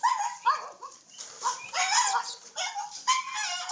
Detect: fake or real real